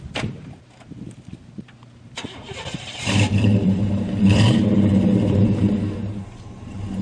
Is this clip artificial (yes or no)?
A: yes